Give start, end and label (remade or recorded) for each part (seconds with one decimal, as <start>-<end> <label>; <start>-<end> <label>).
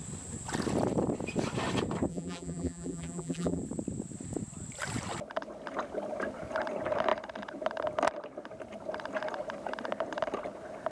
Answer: 0.0-2.1 recorded; 2.1-3.6 remade; 3.6-10.9 recorded